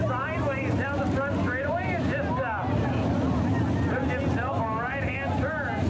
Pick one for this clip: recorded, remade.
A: recorded